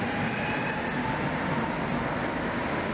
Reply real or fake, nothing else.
real